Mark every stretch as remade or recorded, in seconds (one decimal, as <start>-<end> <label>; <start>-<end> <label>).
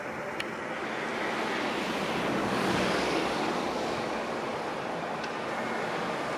0.0-2.4 recorded; 2.4-4.3 remade; 4.3-6.4 recorded